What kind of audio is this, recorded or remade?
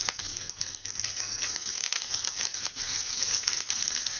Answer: remade